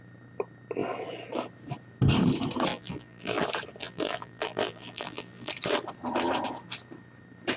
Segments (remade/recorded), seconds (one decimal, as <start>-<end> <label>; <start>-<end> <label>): 0.0-2.7 recorded; 2.7-3.4 remade; 3.4-3.8 recorded; 3.8-5.5 remade; 5.5-7.6 recorded